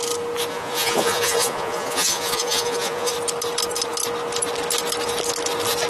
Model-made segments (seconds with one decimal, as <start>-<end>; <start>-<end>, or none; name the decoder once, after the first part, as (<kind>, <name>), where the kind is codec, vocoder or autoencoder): 0.5-3.1 (vocoder, Vocos)